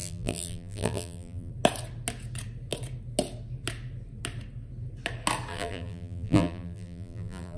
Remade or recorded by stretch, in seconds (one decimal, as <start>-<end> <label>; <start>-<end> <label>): 0.0-1.5 remade; 1.5-5.5 recorded; 5.5-7.6 remade